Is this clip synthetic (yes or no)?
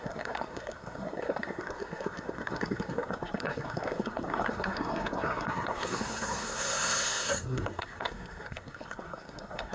yes